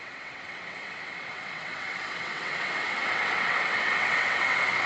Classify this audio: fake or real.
fake